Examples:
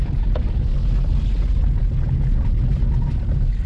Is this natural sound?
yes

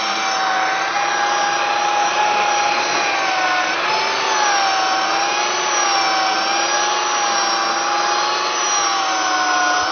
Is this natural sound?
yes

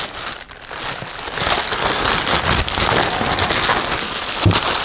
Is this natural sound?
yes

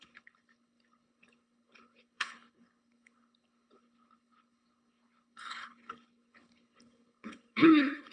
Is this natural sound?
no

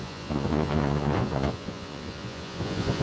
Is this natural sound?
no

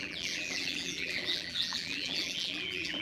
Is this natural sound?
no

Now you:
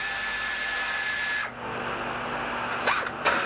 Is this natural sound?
yes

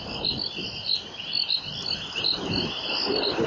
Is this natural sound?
yes